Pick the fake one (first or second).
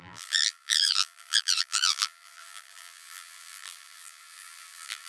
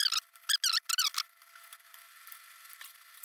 first